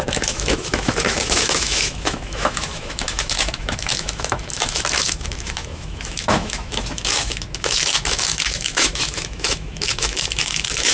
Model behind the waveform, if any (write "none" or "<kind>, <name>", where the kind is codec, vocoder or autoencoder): autoencoder, DAC-VAE